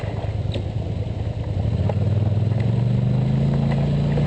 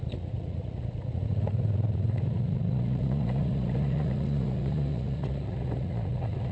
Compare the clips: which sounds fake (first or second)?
second